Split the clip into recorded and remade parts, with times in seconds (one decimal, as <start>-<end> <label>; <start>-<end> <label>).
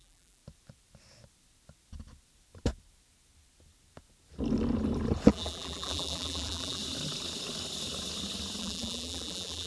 0.0-0.4 remade; 0.4-5.3 recorded; 5.3-6.8 remade; 6.8-8.6 recorded; 8.6-9.7 remade